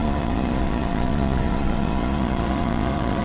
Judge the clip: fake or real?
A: fake